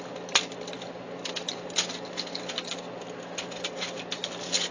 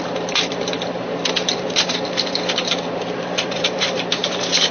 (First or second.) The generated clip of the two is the second